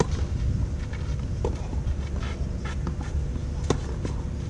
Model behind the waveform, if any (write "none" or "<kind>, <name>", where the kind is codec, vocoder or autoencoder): none